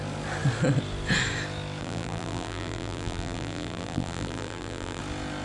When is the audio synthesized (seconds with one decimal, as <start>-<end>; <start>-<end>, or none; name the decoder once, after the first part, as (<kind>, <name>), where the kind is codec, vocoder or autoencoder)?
1.8-5.0 (vocoder, BigVGAN v2)